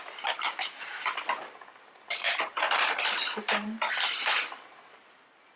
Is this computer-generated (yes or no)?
yes